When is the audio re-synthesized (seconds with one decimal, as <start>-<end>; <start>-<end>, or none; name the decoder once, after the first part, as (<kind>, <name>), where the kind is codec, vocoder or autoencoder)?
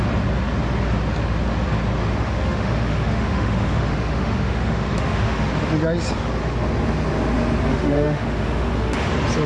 2.0-5.5 (autoencoder, DAC-VAE); 7.7-9.1